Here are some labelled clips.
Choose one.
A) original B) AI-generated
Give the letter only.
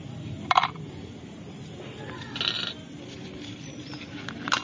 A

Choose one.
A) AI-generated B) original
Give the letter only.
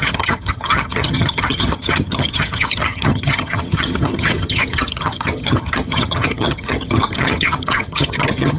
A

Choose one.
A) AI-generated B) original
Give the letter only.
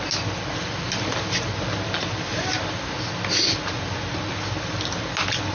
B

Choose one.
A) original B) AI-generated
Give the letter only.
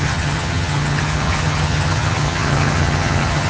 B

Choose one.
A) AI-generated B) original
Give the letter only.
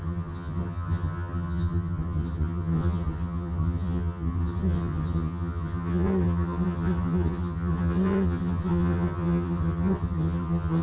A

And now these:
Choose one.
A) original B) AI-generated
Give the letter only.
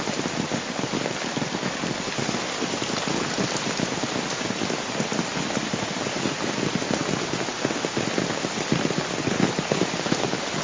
A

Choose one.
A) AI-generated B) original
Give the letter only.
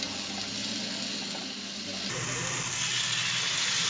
B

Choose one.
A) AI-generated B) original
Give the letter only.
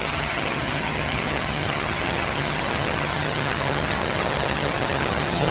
A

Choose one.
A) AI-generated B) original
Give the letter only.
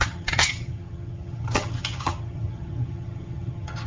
A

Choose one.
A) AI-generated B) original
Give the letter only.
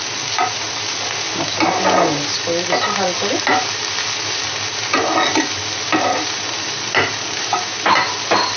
B